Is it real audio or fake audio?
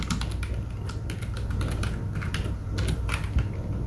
real